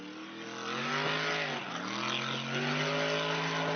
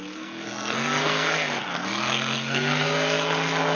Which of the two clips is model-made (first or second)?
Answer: second